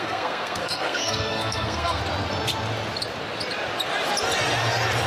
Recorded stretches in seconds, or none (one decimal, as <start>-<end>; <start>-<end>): 2.0-5.1